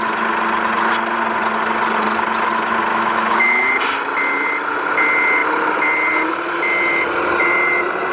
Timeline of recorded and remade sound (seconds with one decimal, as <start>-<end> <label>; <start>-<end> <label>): 0.0-2.9 recorded; 2.9-3.7 remade; 3.7-8.1 recorded